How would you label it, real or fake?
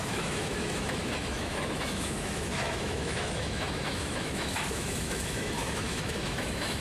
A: fake